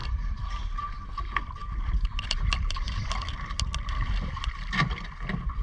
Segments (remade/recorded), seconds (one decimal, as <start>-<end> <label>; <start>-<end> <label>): 0.0-5.6 recorded